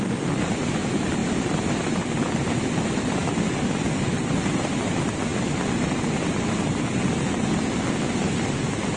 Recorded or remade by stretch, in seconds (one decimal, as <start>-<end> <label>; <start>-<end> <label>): 0.0-9.0 recorded

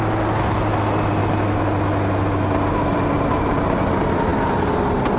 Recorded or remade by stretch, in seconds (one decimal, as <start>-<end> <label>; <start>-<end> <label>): 0.0-5.2 recorded

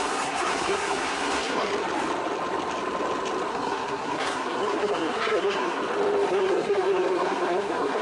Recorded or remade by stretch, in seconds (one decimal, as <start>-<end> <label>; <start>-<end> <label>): 0.0-1.7 remade; 1.7-3.5 recorded; 3.5-5.8 remade; 5.8-6.3 recorded; 6.3-8.0 remade

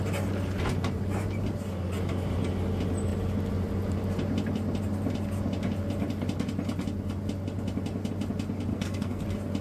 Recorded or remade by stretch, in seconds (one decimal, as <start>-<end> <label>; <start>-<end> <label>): 0.0-8.7 recorded; 8.7-9.2 remade; 9.2-9.6 recorded

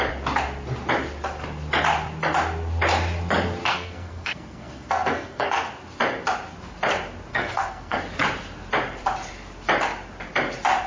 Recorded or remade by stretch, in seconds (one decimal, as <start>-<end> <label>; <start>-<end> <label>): 0.0-3.7 recorded; 3.7-5.7 remade; 5.7-7.3 recorded; 7.3-8.0 remade; 8.0-10.9 recorded

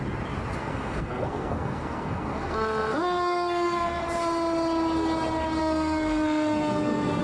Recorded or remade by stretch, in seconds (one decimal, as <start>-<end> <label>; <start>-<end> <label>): 0.0-0.6 recorded; 0.6-4.0 remade; 4.0-5.6 recorded; 5.6-7.2 remade

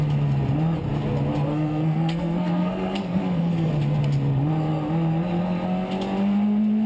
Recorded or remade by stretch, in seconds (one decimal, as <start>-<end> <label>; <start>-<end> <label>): 0.0-1.5 recorded; 1.5-3.7 remade; 3.7-6.9 recorded